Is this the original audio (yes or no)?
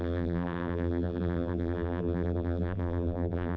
no